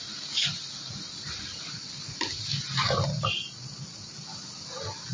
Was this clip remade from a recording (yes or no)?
no